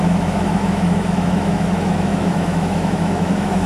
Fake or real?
fake